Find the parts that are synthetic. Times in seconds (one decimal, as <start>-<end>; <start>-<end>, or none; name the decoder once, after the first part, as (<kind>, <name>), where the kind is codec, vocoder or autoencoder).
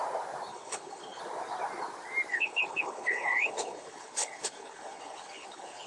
0.5-1.2 (codec, HILCodec); 2.3-5.9